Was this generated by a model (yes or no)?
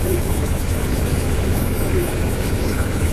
yes